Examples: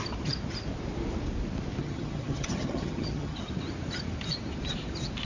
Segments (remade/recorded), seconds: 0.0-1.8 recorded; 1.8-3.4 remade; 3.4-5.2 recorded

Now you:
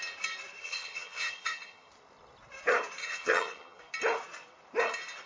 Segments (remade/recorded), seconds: 0.0-0.6 recorded; 0.6-1.9 remade; 1.9-3.0 recorded; 3.0-3.8 remade; 3.8-5.3 recorded

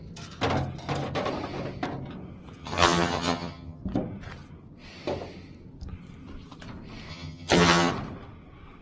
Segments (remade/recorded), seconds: 0.0-2.6 recorded; 2.6-3.8 remade; 3.8-7.1 recorded; 7.1-7.9 remade; 7.9-8.8 recorded

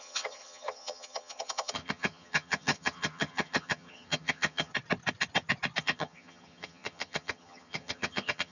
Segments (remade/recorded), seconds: 0.0-4.7 remade; 4.7-5.8 recorded; 5.8-8.5 remade